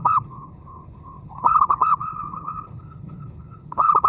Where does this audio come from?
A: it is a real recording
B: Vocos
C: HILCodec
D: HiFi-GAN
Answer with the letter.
C